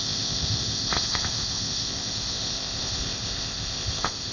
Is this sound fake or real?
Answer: fake